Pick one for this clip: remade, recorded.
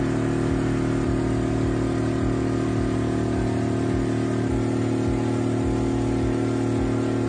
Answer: recorded